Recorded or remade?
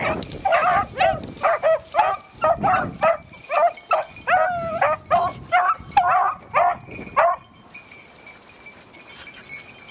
recorded